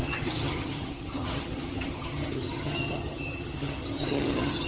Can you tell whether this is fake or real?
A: fake